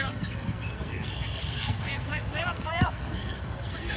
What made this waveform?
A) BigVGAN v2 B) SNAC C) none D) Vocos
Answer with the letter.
B